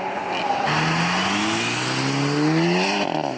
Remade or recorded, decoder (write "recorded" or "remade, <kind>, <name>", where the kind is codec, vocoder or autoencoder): recorded